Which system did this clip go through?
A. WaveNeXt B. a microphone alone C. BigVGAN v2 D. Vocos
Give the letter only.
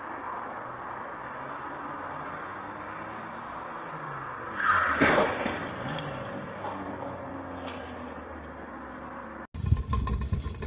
B